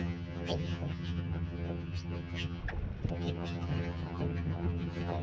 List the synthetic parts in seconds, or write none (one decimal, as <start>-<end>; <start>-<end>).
0.0-2.6; 3.1-5.2